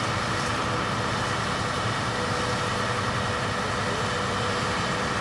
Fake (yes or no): no